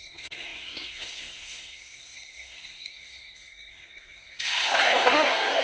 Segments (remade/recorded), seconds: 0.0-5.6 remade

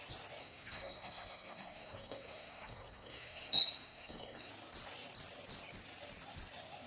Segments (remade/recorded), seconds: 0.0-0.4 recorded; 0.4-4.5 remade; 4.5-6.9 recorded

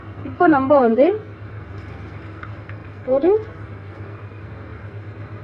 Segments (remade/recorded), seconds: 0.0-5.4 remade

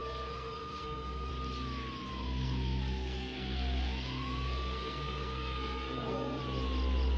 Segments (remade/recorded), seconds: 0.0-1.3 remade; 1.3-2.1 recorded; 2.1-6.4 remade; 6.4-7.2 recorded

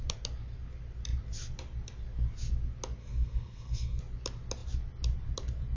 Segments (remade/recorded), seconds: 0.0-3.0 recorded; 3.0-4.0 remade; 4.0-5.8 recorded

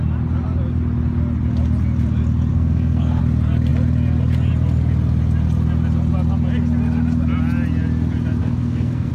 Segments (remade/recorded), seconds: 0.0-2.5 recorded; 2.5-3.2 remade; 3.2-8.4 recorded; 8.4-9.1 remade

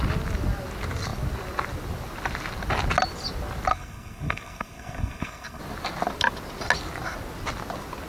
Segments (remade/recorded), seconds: 0.0-3.7 recorded; 3.7-5.6 remade; 5.6-8.1 recorded

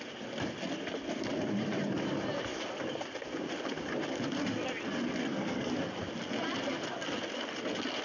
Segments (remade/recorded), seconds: 0.0-5.2 recorded; 5.2-5.7 remade; 5.7-8.0 recorded